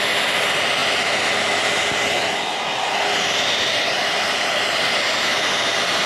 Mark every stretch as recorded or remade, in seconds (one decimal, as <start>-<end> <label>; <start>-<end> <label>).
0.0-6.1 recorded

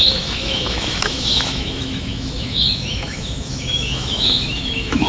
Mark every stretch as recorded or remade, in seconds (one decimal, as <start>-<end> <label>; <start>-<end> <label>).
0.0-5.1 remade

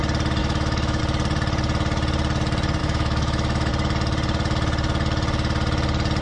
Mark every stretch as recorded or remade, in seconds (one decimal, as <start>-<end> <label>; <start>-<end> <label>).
0.0-0.4 recorded; 0.4-1.0 remade; 1.0-2.8 recorded; 2.8-3.7 remade; 3.7-6.2 recorded

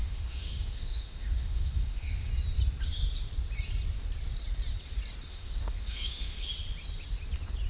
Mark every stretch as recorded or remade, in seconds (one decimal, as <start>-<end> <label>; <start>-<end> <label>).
0.0-2.3 remade; 2.3-5.3 recorded; 5.3-6.5 remade; 6.5-7.7 recorded